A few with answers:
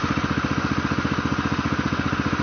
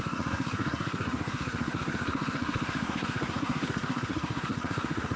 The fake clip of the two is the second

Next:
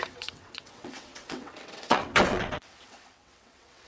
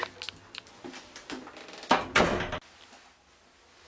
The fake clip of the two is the first